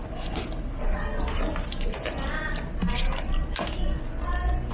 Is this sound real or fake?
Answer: real